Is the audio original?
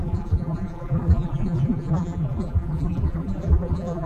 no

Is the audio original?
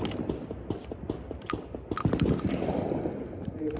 no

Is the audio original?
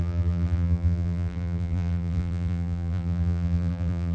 no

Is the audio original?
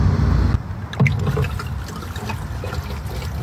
yes